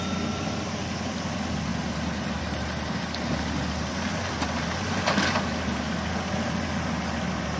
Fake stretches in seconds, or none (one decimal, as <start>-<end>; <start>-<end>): none